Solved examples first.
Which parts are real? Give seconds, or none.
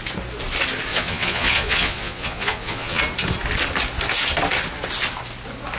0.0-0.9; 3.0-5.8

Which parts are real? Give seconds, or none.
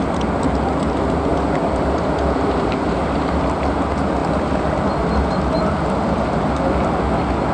0.0-1.3; 2.7-7.5